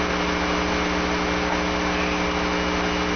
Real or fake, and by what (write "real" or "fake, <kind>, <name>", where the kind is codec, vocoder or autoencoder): real